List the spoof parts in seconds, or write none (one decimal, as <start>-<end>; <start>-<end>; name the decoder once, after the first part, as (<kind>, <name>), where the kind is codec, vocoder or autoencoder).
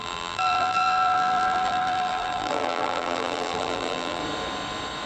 0.0-4.2 (vocoder, BigVGAN v2)